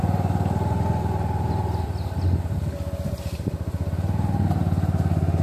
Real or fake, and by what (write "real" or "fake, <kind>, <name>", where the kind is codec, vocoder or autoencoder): real